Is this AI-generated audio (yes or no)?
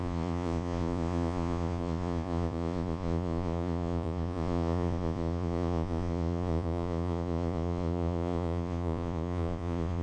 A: yes